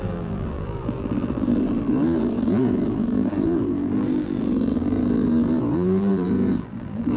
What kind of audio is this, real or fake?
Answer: fake